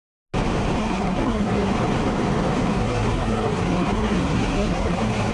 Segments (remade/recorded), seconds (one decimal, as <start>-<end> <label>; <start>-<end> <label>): 0.0-0.8 recorded; 0.8-1.7 remade; 1.7-2.7 recorded; 2.7-5.3 remade